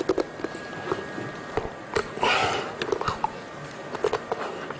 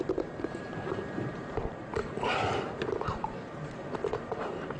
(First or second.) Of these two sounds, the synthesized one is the second